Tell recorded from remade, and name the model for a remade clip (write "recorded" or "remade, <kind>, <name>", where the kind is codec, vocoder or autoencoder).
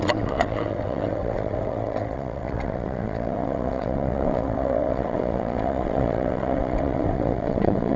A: remade, vocoder, WaveNeXt